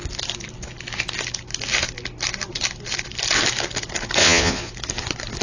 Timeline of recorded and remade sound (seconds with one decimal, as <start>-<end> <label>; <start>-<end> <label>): 0.0-4.2 recorded; 4.2-4.7 remade; 4.7-5.4 recorded